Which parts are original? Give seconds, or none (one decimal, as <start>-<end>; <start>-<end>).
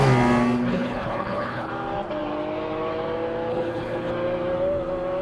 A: 0.0-0.7; 1.7-3.5; 4.1-5.2